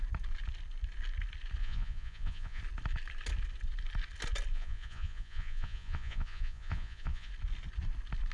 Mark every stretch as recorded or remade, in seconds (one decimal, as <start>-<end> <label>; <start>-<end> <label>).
0.0-1.6 recorded; 1.6-2.6 remade; 2.6-4.5 recorded; 4.5-7.3 remade; 7.3-8.3 recorded